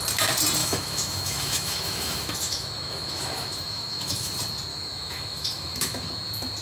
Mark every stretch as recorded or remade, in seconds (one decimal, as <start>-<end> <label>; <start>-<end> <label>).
0.0-0.6 recorded; 0.6-4.3 remade; 4.3-4.7 recorded; 4.7-6.1 remade; 6.1-6.6 recorded